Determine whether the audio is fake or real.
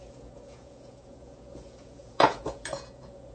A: fake